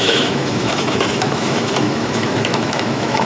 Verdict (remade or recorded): remade